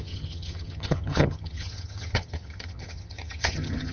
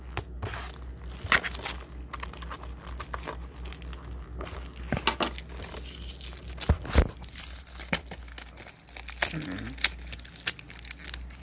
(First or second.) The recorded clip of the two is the second